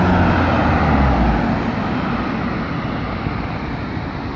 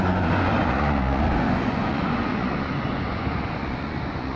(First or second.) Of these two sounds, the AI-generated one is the second